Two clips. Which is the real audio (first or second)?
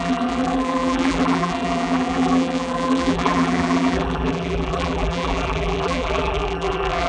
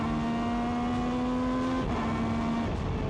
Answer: second